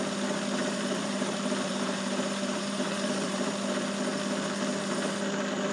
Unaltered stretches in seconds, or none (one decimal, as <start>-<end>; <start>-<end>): 0.0-0.6; 3.5-5.7